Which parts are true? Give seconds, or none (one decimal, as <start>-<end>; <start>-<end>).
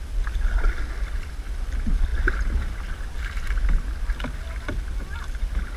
0.0-5.8